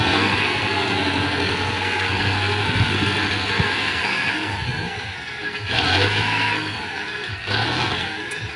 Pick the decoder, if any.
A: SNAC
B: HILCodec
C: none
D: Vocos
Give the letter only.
A